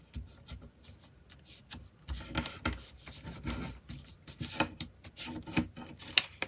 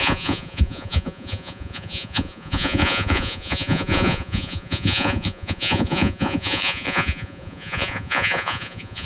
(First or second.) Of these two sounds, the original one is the first